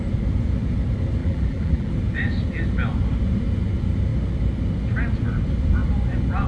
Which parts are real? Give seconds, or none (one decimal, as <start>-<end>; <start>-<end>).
0.0-1.2; 1.9-6.5